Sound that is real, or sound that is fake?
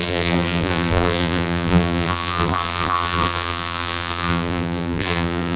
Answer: fake